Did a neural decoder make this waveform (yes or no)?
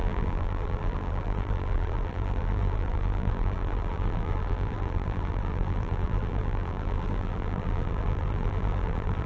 yes